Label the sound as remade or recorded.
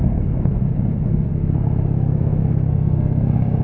remade